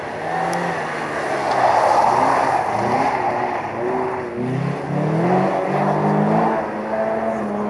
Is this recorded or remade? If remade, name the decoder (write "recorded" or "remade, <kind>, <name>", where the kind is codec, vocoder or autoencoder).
recorded